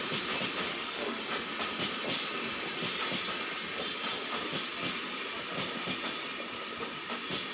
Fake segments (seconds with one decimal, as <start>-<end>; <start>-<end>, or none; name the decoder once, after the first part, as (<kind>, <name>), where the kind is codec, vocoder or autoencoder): 0.7-1.2 (autoencoder, DAC-VAE)